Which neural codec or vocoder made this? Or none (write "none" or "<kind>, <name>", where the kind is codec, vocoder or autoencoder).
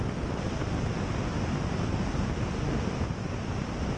none